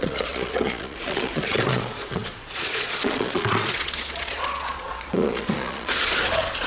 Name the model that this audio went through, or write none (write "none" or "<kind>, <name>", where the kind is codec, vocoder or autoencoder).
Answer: vocoder, Vocos